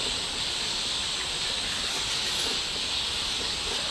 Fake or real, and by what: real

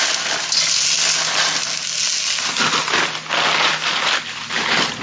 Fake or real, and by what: real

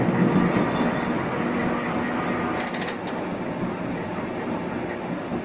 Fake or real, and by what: real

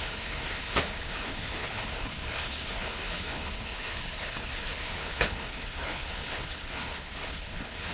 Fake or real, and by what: fake, codec, HILCodec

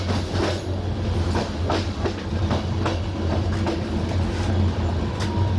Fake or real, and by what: real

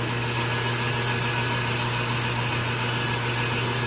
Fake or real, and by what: real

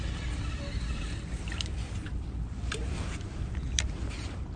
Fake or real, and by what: real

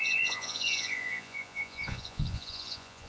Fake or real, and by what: fake, vocoder, Vocos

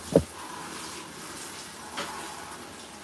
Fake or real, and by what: real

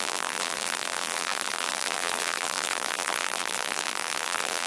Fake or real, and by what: fake, vocoder, BigVGAN v2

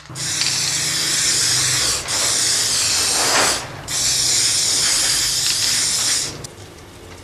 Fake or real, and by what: real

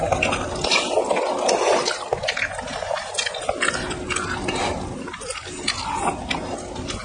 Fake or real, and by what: real